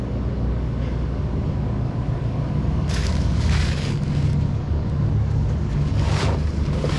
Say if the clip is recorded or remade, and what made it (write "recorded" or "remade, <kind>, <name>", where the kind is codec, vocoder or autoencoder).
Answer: remade, codec, DAC